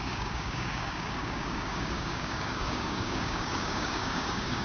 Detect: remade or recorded remade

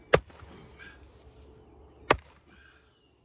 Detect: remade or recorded recorded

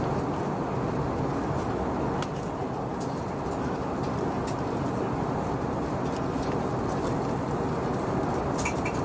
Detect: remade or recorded recorded